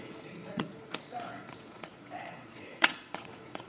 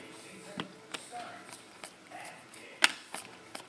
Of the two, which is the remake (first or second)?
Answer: first